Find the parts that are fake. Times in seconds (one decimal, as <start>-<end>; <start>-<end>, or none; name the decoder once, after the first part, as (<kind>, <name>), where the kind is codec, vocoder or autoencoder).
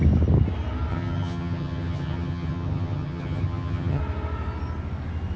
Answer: 0.9-4.0 (vocoder, HiFi-GAN)